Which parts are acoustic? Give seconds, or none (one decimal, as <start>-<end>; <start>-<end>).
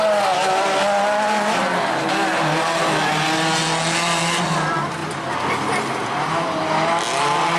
0.0-7.6